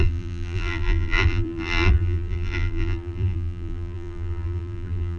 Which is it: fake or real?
fake